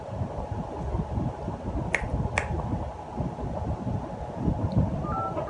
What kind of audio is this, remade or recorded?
recorded